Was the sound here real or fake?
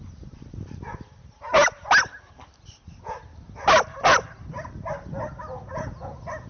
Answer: real